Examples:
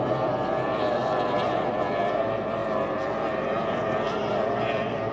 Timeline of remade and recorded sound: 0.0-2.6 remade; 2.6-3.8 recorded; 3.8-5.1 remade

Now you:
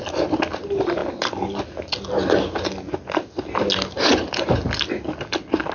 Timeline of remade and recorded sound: 0.0-5.7 recorded

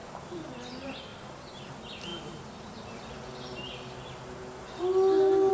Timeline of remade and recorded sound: 0.0-0.7 remade; 0.7-1.1 recorded; 1.1-1.7 remade; 1.7-5.5 recorded